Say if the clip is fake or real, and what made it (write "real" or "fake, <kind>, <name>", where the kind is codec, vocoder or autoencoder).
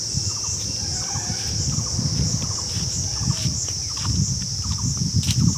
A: real